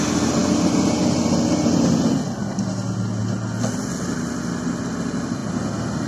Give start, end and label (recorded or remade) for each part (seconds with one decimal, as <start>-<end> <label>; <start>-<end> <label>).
0.0-6.1 recorded